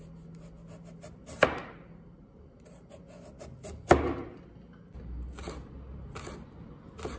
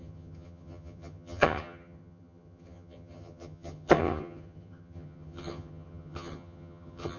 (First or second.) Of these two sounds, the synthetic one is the second